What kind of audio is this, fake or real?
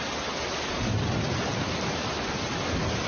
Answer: real